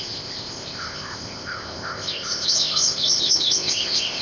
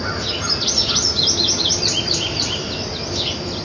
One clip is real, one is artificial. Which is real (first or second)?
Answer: second